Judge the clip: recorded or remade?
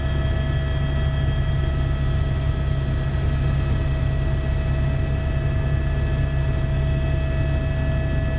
recorded